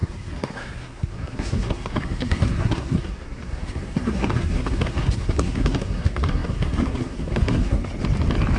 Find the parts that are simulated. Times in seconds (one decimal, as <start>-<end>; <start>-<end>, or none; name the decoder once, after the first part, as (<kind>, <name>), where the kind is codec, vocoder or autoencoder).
0.0-7.8 (codec, SNAC)